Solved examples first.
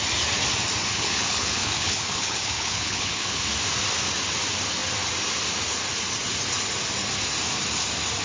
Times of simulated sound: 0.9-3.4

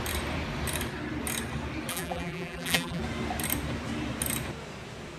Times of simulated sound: 1.9-3.0

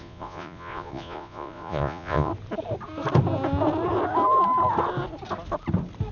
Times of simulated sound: 0.0-2.3